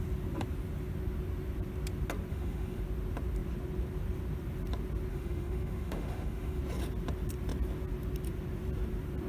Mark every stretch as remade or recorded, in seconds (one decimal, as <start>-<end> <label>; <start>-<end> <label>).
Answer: 0.0-2.3 recorded; 2.3-2.8 remade; 2.8-5.1 recorded; 5.1-6.6 remade; 6.6-9.3 recorded